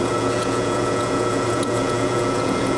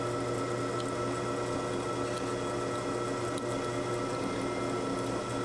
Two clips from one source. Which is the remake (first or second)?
first